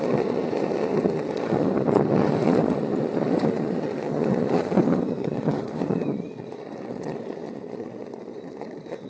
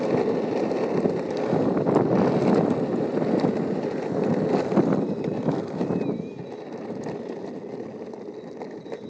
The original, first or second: second